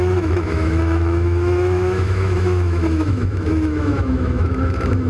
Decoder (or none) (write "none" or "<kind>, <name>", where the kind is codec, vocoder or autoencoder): autoencoder, DAC-VAE